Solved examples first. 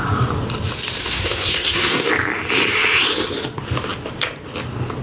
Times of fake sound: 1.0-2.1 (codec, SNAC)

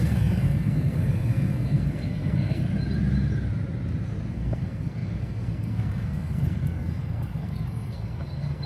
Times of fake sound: 0.0-2.6 (codec, SNAC); 4.3-8.7

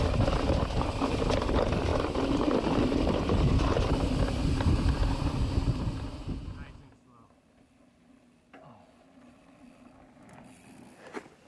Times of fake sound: none

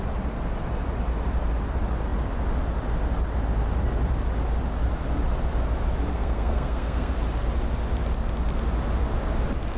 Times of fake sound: 6.1-7.1 (codec, SNAC)

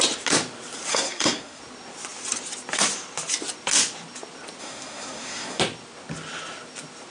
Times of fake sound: 0.9-1.6 (codec, SNAC); 4.6-5.6

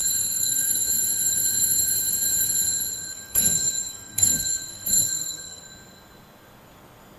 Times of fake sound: 0.0-0.9 (codec, SNAC); 3.1-5.6